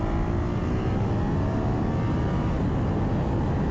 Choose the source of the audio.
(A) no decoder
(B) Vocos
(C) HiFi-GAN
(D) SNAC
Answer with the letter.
A